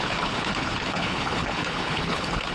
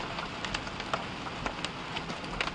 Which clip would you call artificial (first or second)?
first